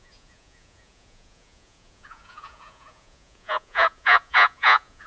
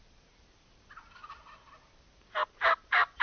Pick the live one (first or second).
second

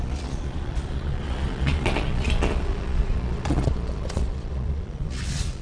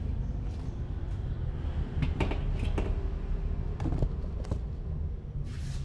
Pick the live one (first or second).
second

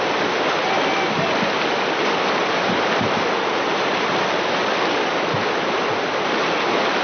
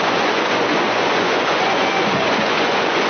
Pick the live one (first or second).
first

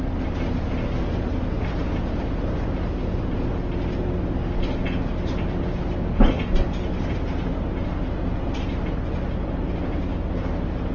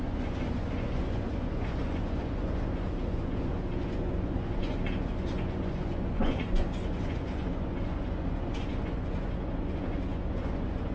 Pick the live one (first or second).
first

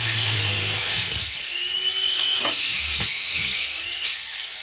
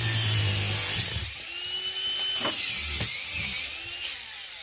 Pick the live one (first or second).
second